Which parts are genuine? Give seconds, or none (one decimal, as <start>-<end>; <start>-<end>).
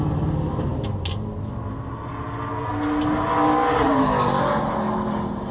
0.0-5.5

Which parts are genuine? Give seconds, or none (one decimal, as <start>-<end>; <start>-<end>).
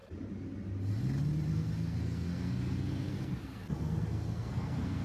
0.0-1.5